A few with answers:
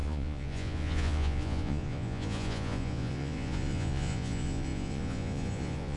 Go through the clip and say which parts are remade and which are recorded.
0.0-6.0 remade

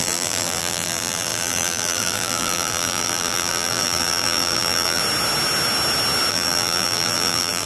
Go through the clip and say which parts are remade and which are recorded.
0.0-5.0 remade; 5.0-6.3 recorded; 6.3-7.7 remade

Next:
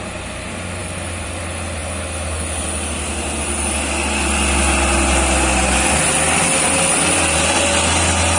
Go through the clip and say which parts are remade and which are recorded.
0.0-0.8 recorded; 0.8-1.4 remade; 1.4-8.4 recorded

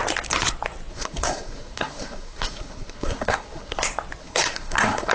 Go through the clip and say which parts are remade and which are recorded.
0.0-0.9 recorded; 0.9-3.8 remade; 3.8-4.2 recorded; 4.2-5.1 remade

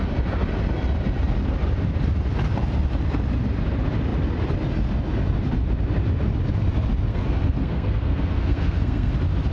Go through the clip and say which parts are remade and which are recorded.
0.0-7.1 recorded; 7.1-9.1 remade; 9.1-9.5 recorded